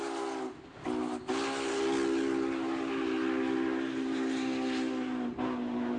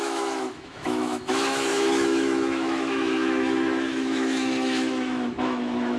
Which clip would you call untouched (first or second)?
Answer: first